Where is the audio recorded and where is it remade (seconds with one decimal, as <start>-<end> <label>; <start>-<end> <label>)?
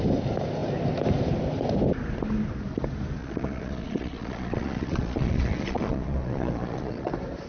0.0-3.2 recorded; 3.2-7.1 remade; 7.1-7.5 recorded